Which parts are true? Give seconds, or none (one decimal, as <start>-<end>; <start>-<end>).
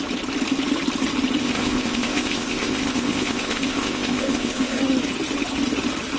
0.0-1.4; 4.8-6.2